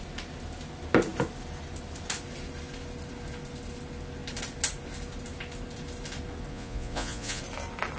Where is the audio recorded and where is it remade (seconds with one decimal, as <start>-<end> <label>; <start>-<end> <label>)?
0.0-6.5 recorded; 6.5-7.4 remade; 7.4-8.0 recorded